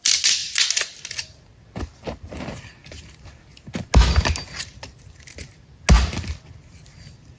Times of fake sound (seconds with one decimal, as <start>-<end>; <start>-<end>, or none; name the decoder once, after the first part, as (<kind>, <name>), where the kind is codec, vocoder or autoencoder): none